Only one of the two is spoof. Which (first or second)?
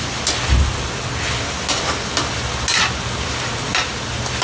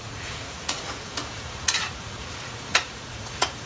second